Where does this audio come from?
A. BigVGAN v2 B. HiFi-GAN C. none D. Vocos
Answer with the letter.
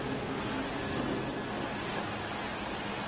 C